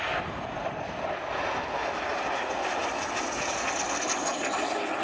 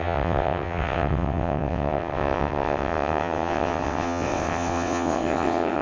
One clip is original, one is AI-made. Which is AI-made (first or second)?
second